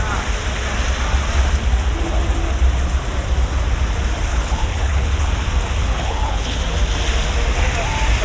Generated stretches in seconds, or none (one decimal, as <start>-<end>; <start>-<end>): 4.3-5.3; 5.8-6.6

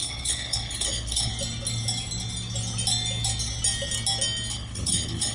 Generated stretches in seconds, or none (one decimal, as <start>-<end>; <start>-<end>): 0.0-1.3; 4.5-5.3

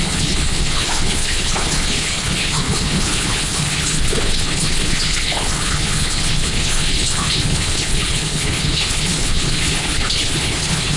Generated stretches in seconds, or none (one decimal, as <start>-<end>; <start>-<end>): 0.0-11.0